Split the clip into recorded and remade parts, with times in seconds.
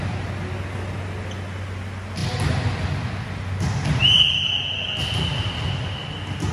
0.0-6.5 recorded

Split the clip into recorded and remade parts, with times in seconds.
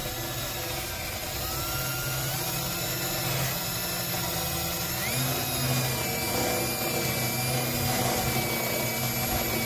0.0-9.7 recorded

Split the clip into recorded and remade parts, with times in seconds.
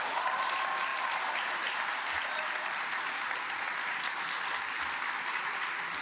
0.0-6.0 recorded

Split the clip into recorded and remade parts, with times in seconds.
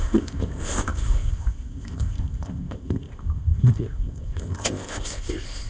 0.0-5.7 remade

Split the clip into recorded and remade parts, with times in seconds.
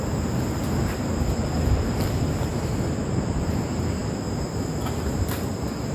0.0-5.9 recorded